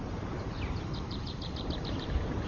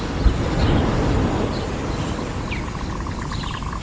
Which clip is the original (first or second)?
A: second